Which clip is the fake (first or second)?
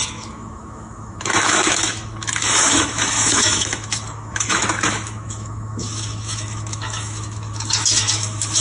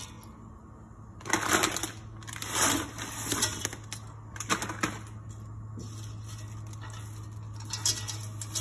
first